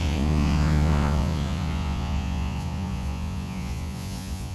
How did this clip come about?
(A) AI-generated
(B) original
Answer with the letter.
A